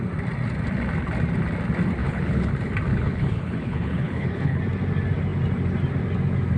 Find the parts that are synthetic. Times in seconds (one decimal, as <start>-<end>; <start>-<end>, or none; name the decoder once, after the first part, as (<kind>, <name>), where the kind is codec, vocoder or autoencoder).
2.0-2.5 (codec, HILCodec); 2.9-4.6